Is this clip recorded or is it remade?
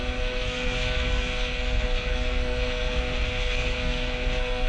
remade